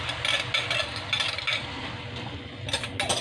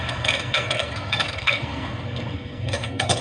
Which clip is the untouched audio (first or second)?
first